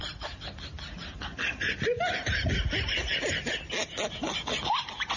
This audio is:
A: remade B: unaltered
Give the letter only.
B